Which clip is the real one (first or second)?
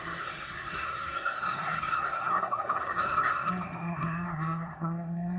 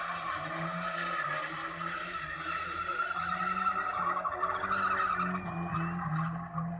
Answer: second